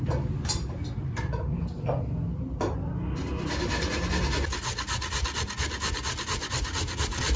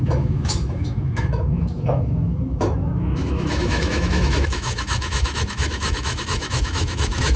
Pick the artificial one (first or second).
second